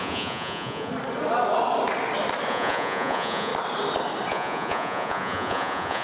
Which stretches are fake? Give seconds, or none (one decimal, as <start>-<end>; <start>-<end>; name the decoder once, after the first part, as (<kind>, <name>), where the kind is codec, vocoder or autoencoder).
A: 0.0-0.9 (vocoder, Vocos); 2.5-3.5; 4.3-6.0